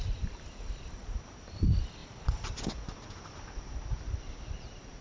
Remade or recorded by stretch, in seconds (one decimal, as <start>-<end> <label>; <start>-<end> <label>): 0.0-2.0 remade; 2.0-4.6 recorded; 4.6-5.0 remade

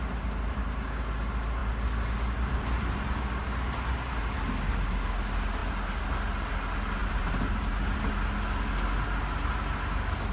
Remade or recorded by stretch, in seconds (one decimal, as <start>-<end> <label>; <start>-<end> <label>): 0.0-7.0 recorded; 7.0-8.1 remade; 8.1-10.3 recorded